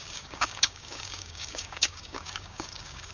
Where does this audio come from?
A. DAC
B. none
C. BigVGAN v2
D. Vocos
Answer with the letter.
A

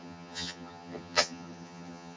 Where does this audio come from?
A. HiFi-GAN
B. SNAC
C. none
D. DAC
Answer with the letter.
A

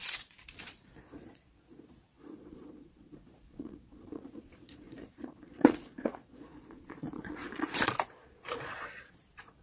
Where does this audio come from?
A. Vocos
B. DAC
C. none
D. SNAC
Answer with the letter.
A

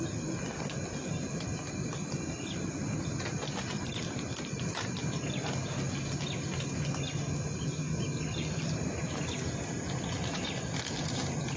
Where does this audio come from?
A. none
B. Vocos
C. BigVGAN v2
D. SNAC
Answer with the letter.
A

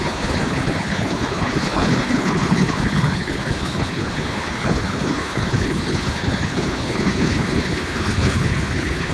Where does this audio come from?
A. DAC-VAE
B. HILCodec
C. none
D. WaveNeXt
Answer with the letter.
B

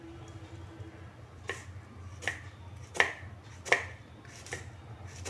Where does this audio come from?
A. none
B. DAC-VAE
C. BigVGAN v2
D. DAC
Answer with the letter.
A